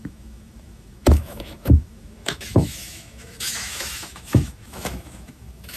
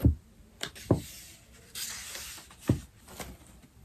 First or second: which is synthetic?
first